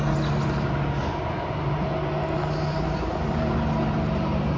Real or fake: real